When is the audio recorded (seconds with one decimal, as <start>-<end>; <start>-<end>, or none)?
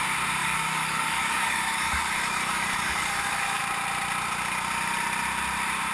0.0-0.4; 3.6-5.9